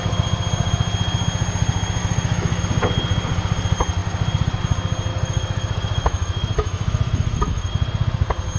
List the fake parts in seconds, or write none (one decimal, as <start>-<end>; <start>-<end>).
2.0-2.6; 5.1-7.7